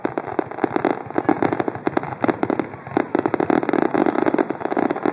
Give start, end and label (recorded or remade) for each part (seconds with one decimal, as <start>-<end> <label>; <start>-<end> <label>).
0.0-5.1 recorded